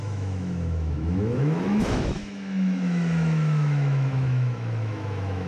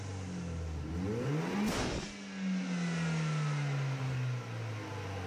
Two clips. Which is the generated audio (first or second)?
first